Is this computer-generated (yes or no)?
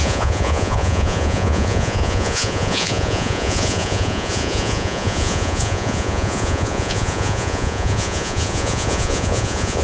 yes